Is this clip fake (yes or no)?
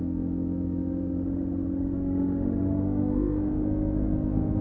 yes